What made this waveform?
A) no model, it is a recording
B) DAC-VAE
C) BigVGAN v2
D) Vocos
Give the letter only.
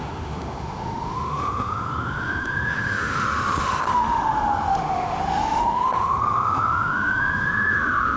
B